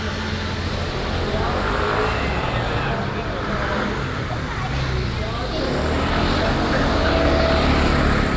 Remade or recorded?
recorded